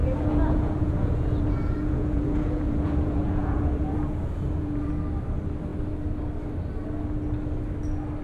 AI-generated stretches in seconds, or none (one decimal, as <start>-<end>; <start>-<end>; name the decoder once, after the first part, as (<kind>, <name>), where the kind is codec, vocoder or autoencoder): 0.0-4.9 (vocoder, Vocos)